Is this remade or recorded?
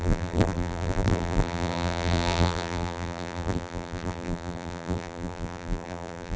remade